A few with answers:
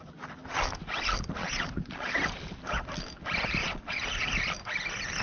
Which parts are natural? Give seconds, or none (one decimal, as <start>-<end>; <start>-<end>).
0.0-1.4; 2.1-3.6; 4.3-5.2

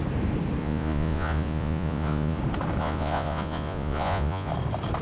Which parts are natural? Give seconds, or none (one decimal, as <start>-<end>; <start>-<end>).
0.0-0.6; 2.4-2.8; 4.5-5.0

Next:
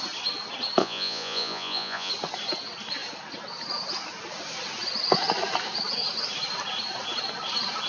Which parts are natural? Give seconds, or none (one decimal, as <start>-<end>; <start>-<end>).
0.0-0.8; 2.1-7.9